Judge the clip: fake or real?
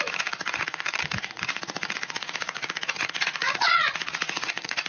fake